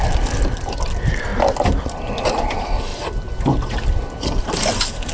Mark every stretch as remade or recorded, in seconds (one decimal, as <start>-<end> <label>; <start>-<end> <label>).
0.0-5.1 recorded